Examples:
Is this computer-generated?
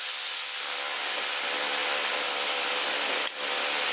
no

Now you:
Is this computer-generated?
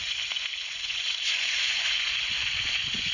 yes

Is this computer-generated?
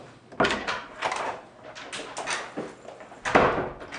no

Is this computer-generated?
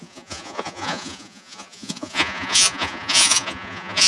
yes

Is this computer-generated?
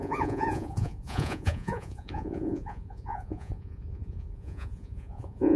yes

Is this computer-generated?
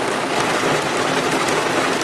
no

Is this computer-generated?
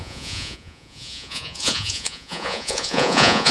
yes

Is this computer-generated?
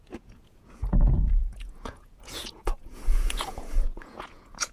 yes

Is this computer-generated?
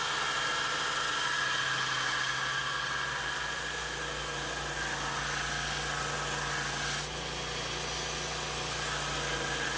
no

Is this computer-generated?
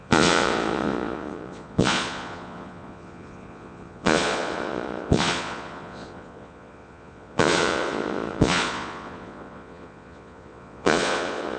yes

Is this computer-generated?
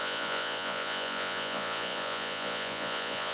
yes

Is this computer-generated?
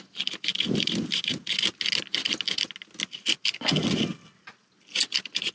no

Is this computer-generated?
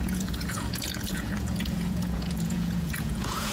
yes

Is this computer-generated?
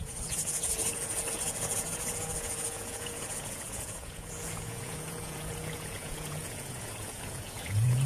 yes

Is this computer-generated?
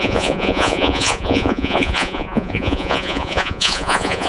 yes